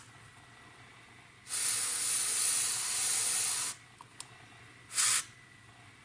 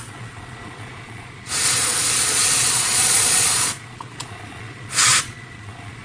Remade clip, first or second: second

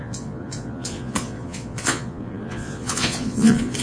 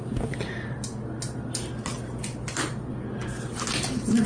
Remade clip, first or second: first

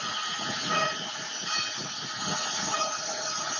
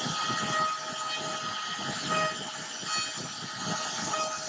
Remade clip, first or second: first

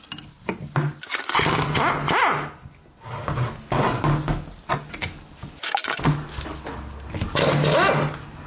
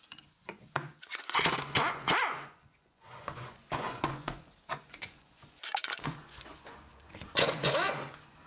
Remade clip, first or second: second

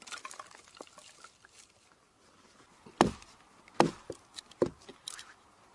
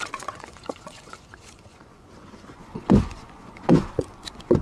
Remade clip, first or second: second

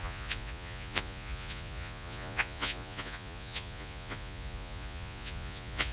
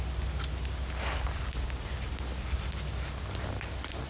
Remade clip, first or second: first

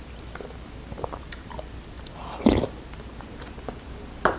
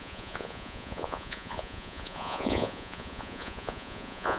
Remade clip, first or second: second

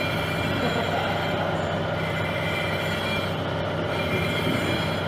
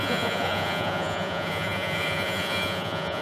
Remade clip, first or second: second